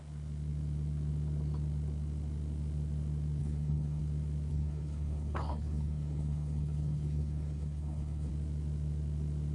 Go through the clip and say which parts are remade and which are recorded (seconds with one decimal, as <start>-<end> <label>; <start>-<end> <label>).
0.0-3.4 recorded; 3.4-4.0 remade; 4.0-4.5 recorded; 4.5-8.3 remade; 8.3-9.5 recorded